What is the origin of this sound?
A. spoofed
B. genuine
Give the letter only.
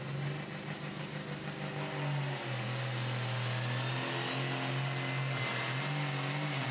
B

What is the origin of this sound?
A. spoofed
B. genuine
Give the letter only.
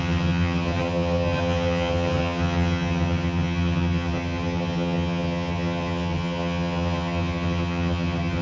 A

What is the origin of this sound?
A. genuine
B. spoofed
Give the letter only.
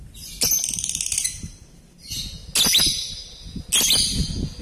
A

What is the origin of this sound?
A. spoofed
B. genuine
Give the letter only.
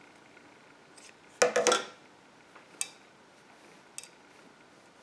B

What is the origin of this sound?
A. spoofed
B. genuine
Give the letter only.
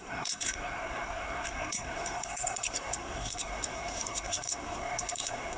A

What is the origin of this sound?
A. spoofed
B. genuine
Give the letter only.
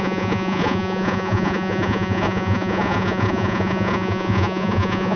A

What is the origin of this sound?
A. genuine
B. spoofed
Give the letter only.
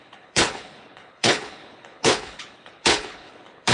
B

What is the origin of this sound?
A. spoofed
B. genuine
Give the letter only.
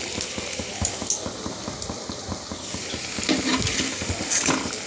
B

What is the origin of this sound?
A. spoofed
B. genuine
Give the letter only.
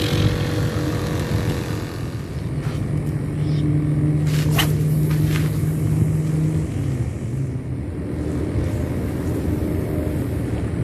B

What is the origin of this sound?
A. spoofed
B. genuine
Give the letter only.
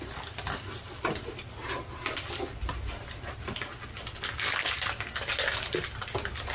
B